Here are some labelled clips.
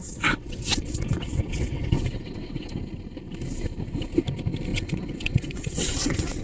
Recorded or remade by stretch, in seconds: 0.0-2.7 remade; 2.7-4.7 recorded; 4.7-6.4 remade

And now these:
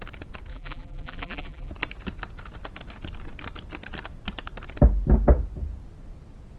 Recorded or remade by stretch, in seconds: 0.0-0.5 recorded; 0.5-1.7 remade; 1.7-6.6 recorded

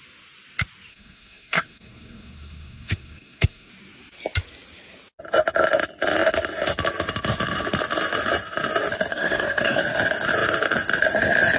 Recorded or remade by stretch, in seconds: 0.0-0.9 recorded; 0.9-3.7 remade; 3.7-9.1 recorded; 9.1-9.8 remade; 9.8-11.6 recorded

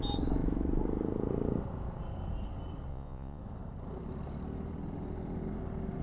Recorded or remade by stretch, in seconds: 0.0-2.9 recorded; 2.9-3.4 remade; 3.4-6.0 recorded

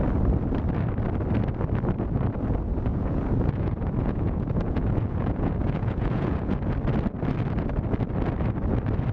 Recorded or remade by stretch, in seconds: 0.0-2.9 recorded; 2.9-6.7 remade; 6.7-9.1 recorded

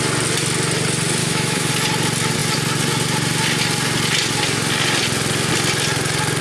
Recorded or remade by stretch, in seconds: 0.0-1.2 recorded; 1.2-1.7 remade; 1.7-6.4 recorded

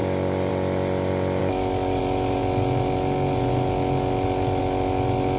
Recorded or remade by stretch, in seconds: 0.0-1.4 recorded; 1.4-2.0 remade; 2.0-5.4 recorded

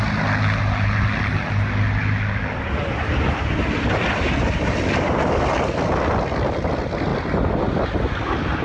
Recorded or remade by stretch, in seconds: 0.0-8.6 recorded